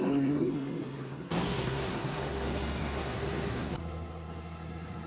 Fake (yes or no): yes